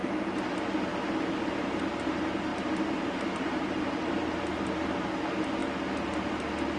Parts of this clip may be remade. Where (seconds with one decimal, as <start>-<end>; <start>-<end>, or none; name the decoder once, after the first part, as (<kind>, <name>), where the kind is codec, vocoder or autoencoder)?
0.0-0.5 (vocoder, BigVGAN v2); 0.9-1.8; 2.5-4.0